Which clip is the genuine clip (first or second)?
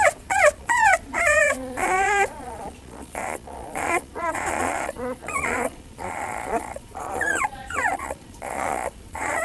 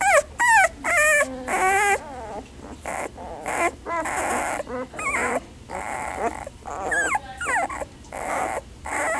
second